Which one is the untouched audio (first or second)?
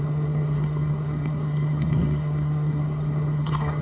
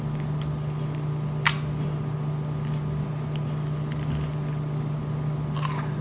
second